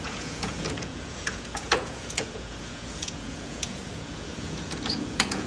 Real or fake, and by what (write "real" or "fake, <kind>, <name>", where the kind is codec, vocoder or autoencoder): fake, vocoder, Vocos